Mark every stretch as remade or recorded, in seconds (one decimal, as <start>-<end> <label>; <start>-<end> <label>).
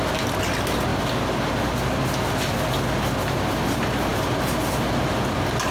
0.0-5.7 recorded